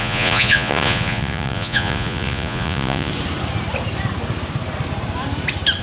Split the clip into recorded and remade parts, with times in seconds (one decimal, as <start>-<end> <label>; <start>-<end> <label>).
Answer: 0.0-3.1 remade; 3.1-5.8 recorded

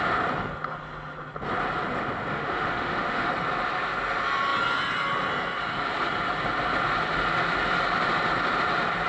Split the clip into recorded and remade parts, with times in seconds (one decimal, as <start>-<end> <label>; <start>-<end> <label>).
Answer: 0.0-2.3 recorded; 2.3-3.3 remade; 3.3-9.1 recorded

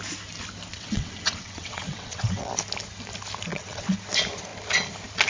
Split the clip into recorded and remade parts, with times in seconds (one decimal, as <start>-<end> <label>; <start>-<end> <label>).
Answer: 0.0-0.7 recorded; 0.7-2.5 remade; 2.5-3.5 recorded; 3.5-4.0 remade; 4.0-5.3 recorded

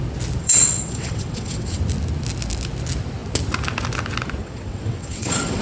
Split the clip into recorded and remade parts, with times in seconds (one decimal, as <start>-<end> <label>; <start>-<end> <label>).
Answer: 0.0-0.4 recorded; 0.4-1.8 remade; 1.8-4.4 recorded; 4.4-5.6 remade

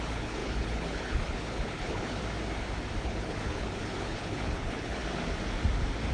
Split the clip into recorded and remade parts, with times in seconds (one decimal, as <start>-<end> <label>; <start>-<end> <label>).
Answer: 0.0-2.2 remade; 2.2-3.0 recorded; 3.0-5.0 remade; 5.0-6.1 recorded

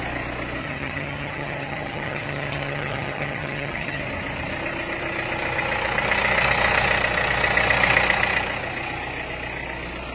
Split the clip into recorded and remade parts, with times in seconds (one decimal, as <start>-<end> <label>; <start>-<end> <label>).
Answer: 0.0-0.6 recorded; 0.6-4.0 remade; 4.0-10.1 recorded